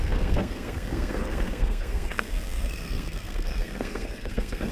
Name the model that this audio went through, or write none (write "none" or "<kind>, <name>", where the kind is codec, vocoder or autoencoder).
codec, SNAC